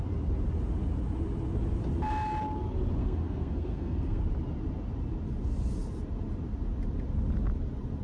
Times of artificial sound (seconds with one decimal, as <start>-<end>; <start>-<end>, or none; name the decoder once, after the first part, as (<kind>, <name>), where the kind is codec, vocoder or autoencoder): 3.0-4.2 (codec, SNAC)